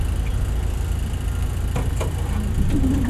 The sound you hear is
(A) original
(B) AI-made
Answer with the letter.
A